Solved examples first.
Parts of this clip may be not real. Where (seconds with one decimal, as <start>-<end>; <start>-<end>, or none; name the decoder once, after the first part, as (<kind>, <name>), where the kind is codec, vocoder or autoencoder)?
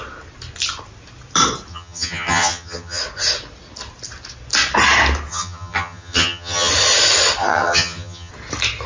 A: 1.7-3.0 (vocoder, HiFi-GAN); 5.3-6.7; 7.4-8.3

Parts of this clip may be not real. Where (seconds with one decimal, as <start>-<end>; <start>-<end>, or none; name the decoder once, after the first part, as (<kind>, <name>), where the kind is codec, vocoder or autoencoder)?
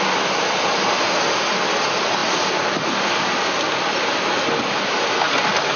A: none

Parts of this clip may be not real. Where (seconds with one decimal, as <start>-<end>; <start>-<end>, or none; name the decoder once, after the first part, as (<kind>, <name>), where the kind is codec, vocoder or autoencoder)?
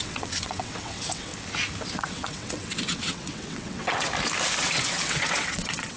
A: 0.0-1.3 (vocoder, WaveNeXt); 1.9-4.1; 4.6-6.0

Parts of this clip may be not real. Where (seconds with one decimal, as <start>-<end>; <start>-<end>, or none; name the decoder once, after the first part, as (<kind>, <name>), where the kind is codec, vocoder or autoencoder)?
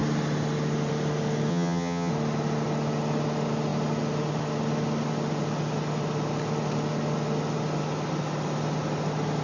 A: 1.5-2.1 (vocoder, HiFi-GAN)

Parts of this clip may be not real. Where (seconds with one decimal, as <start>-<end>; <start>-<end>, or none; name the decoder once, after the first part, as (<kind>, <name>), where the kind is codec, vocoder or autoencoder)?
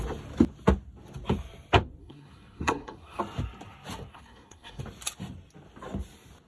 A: 2.0-3.2 (codec, SNAC); 4.1-4.8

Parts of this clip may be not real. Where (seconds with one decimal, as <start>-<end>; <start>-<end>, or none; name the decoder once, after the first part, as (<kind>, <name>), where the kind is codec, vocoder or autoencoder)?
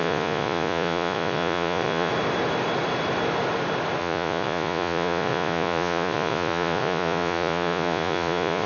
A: 0.0-2.1 (vocoder, Vocos); 4.0-8.7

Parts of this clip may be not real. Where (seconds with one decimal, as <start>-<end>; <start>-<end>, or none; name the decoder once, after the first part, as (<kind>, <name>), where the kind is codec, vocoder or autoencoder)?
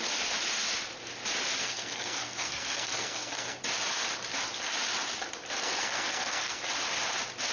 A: 1.6-3.6 (codec, SNAC); 5.6-6.6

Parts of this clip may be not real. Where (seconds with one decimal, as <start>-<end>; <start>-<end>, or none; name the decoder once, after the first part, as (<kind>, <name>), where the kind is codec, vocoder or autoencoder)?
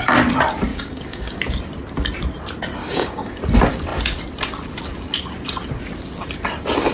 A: 0.7-1.4 (codec, DAC); 2.8-3.4